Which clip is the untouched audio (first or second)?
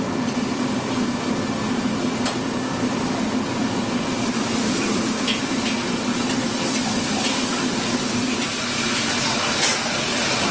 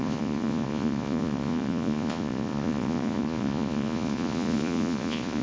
first